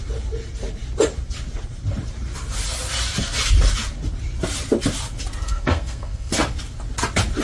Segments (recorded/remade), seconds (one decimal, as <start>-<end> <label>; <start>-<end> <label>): 0.0-5.4 recorded; 5.4-6.3 remade; 6.3-7.4 recorded